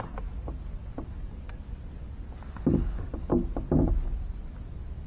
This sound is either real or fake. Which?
real